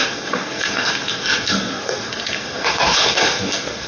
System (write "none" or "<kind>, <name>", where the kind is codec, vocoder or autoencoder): codec, SNAC